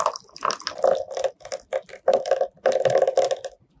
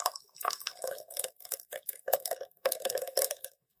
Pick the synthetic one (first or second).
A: second